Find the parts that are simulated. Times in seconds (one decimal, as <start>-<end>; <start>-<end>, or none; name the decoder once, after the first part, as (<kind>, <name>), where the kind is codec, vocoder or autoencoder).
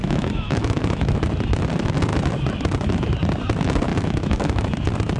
0.0-1.2 (autoencoder, DAC-VAE); 3.9-4.6